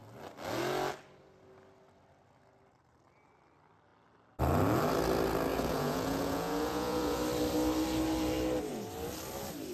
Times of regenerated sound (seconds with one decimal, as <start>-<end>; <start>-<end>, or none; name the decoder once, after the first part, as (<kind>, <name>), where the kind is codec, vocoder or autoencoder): 5.5-7.2 (vocoder, Vocos)